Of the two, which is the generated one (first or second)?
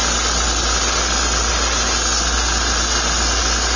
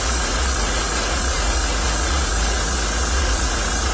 second